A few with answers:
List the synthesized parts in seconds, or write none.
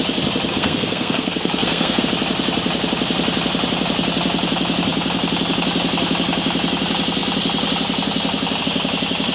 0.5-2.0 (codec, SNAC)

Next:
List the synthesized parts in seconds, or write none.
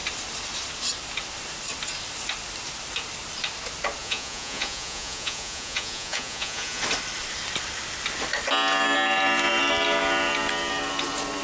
4.0-6.8 (vocoder, Vocos)